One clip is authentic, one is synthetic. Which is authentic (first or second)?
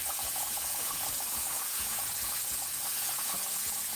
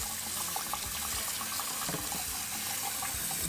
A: second